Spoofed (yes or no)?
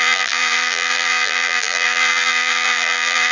yes